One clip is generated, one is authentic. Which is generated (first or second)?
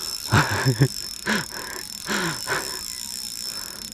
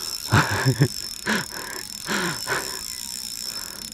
second